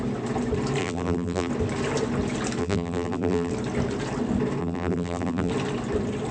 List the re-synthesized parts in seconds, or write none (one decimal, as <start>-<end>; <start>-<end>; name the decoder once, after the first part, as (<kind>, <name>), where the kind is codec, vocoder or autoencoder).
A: 0.8-1.5 (vocoder, BigVGAN v2); 2.6-3.5; 4.6-5.5